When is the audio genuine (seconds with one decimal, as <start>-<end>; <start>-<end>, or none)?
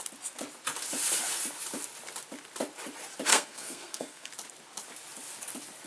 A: 0.0-3.3; 4.3-5.9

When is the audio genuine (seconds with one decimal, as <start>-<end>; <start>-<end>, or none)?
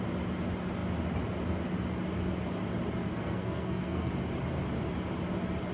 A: 0.0-3.0; 4.1-5.7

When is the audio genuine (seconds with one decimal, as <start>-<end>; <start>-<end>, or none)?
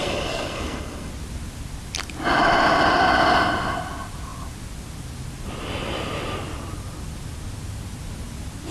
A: 1.1-8.7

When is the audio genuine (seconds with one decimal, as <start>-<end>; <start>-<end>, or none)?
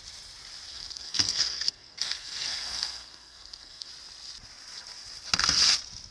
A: 0.0-0.7; 3.9-6.1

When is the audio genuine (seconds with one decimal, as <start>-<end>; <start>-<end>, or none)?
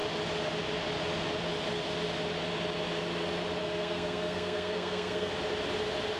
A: 0.0-3.6; 5.3-6.2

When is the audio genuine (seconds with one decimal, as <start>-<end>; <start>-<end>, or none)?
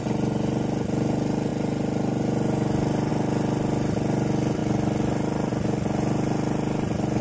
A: 0.0-7.2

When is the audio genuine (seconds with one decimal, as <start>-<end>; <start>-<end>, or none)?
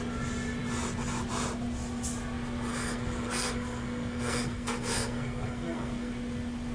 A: 0.0-2.7; 6.1-6.7